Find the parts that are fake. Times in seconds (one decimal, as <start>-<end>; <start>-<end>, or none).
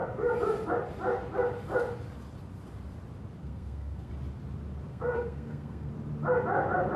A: 3.4-4.1; 4.9-5.9